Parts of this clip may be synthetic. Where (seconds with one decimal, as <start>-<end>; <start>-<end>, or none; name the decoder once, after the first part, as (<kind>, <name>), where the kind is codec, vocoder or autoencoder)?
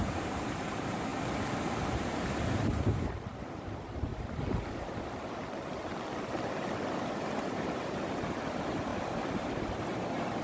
0.0-1.1 (vocoder, BigVGAN v2); 1.9-4.1; 7.4-8.9; 9.8-10.4